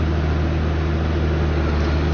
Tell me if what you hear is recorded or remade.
recorded